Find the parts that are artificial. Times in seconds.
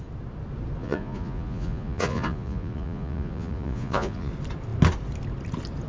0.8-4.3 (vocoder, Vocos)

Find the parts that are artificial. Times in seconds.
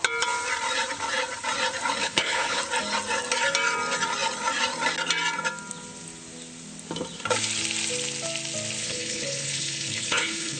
2.0-2.6 (codec, HILCodec); 8.8-10.6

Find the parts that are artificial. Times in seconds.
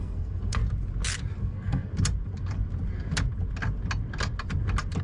0.0-0.6 (codec, SNAC); 1.4-1.9